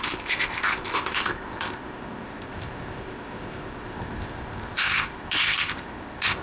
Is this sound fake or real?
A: fake